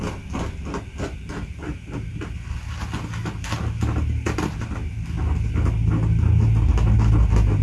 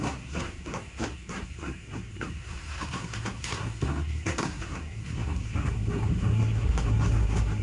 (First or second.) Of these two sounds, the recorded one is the first